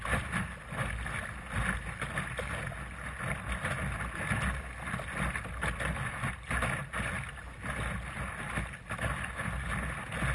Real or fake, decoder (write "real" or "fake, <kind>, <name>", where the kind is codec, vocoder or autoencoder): real